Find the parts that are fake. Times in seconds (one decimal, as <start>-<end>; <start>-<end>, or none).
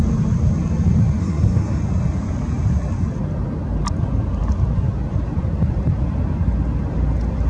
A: 1.2-1.8